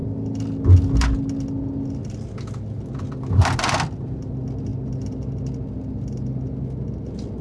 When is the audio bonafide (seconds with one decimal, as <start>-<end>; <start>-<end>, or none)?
0.0-7.4